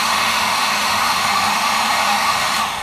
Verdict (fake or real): fake